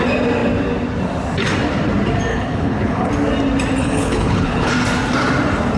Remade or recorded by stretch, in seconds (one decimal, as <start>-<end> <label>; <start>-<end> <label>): 0.0-2.3 recorded; 2.3-3.1 remade; 3.1-3.8 recorded; 3.8-4.7 remade; 4.7-5.8 recorded